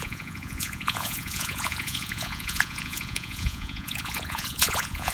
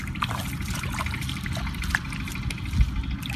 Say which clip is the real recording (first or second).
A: second